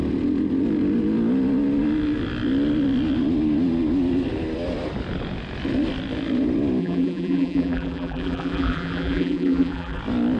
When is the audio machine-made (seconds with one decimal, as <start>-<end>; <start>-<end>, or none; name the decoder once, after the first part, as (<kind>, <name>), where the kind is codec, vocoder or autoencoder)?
6.8-10.0 (vocoder, BigVGAN v2)